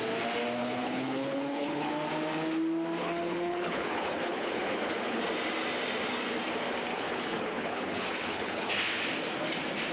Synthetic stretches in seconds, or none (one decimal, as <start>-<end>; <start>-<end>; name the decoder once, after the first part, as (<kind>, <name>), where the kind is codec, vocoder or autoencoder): 0.6-1.9 (codec, HILCodec); 3.0-5.2; 6.9-8.7